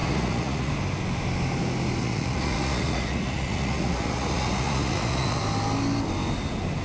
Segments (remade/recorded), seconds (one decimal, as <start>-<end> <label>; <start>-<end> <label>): 0.0-0.7 remade; 0.7-2.0 recorded; 2.0-5.4 remade; 5.4-6.8 recorded